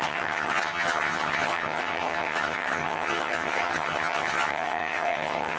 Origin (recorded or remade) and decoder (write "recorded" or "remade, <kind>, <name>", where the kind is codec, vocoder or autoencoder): remade, vocoder, HiFi-GAN